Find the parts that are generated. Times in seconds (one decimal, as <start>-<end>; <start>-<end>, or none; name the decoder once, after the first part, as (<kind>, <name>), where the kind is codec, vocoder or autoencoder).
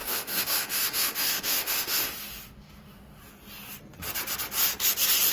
0.0-3.2 (autoencoder, DAC-VAE)